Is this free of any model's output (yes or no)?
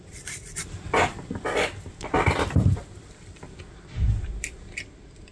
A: no